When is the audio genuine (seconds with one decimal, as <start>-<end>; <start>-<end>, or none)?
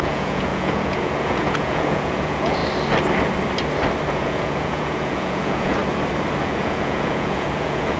2.6-4.1; 5.8-6.4